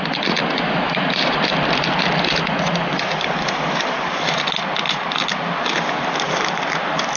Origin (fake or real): real